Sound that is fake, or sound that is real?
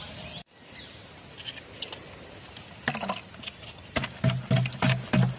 real